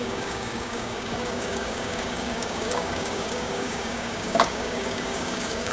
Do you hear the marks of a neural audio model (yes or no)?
yes